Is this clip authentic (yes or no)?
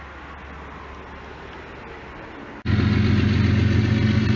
yes